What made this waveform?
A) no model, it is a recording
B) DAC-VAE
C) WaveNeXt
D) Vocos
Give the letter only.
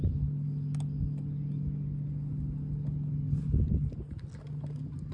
A